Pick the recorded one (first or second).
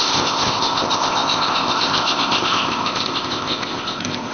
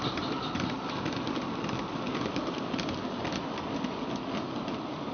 second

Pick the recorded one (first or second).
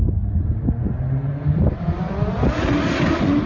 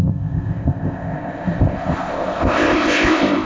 first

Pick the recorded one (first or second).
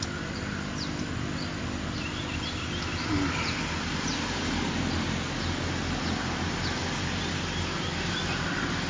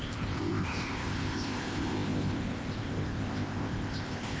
first